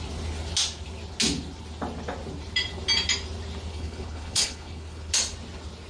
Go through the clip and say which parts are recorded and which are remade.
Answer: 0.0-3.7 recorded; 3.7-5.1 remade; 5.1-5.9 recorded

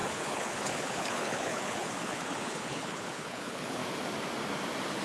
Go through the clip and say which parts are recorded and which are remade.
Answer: 0.0-3.8 remade; 3.8-5.0 recorded

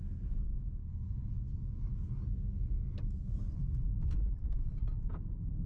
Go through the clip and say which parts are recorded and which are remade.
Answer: 0.0-0.8 recorded; 0.8-1.3 remade; 1.3-5.7 recorded

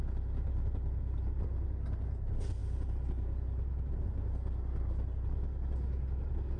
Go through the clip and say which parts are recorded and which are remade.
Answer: 0.0-6.6 recorded

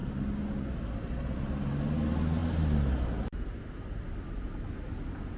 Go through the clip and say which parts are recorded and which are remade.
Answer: 0.0-5.4 recorded

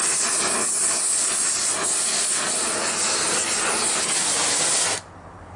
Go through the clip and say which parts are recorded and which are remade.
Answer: 0.0-5.6 recorded

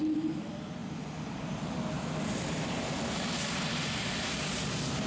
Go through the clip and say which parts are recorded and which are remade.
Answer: 0.0-5.1 recorded